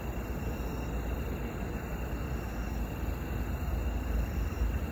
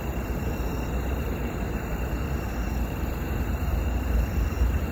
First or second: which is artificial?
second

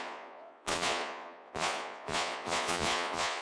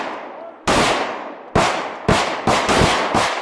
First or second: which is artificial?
first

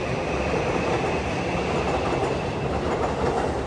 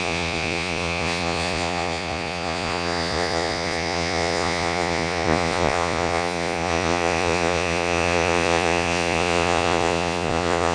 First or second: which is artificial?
second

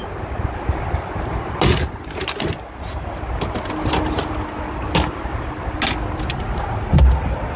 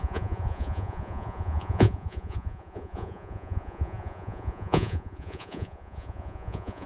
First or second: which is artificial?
second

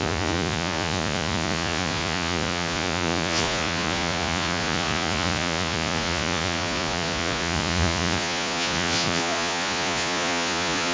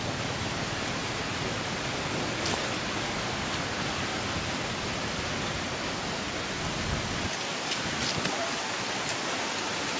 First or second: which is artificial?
first